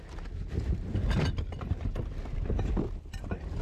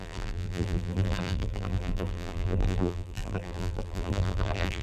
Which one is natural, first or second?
first